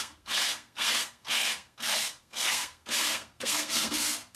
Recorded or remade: remade